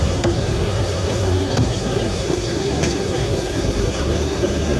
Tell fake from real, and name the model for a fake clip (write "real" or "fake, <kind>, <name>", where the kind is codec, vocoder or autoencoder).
fake, codec, SNAC